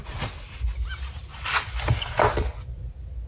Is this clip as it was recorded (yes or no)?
yes